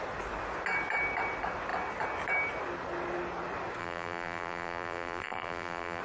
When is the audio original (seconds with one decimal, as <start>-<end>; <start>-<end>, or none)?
0.0-3.8